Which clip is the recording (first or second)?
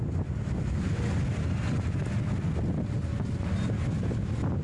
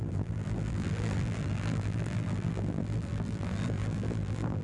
first